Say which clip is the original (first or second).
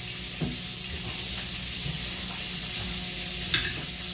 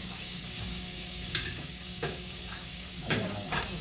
first